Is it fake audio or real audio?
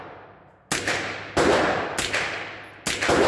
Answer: real